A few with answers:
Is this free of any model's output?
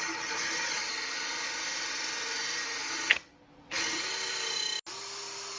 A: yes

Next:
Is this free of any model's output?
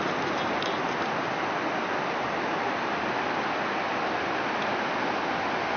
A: yes